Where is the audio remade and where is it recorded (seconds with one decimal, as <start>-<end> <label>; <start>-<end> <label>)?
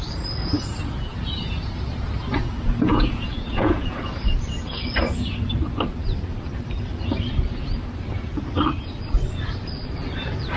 0.0-2.9 recorded; 2.9-4.0 remade; 4.0-10.6 recorded